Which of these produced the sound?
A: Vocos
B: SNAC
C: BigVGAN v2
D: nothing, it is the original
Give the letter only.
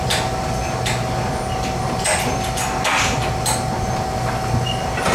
D